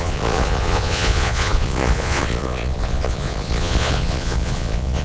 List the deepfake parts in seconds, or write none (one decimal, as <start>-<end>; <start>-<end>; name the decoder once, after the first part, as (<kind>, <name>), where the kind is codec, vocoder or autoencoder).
0.0-5.0 (vocoder, Vocos)